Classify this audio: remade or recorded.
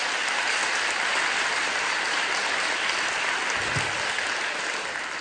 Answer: recorded